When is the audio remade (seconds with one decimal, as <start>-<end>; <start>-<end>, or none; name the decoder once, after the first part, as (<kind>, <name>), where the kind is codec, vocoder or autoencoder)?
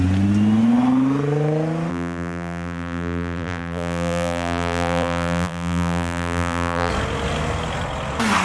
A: 1.9-6.9 (vocoder, BigVGAN v2)